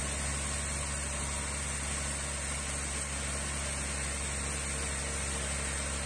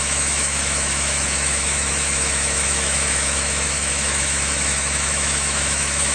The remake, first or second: second